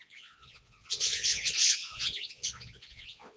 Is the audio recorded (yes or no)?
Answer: no